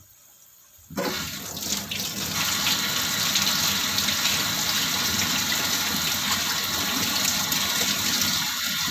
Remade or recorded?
recorded